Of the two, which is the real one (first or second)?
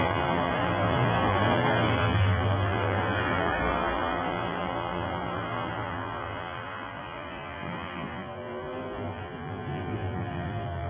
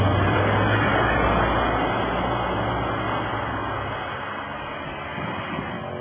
second